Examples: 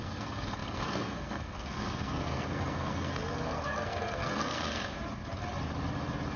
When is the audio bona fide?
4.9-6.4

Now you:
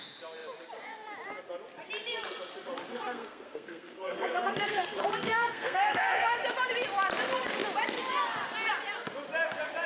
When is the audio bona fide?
0.0-2.9; 6.4-9.9

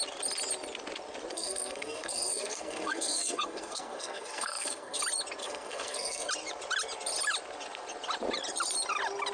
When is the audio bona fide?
0.0-1.3; 5.0-5.4; 6.3-9.3

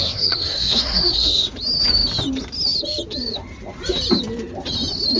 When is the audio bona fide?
1.5-5.2

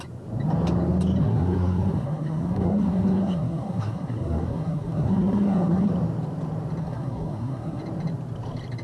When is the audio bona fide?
0.0-1.2; 5.9-6.8; 7.8-8.8

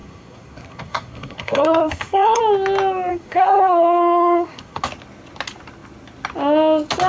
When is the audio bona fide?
2.4-3.1; 4.8-7.1

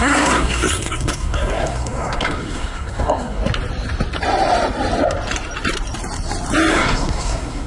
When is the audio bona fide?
3.4-6.7

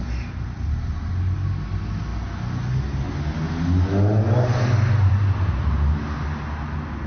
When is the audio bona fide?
0.0-7.1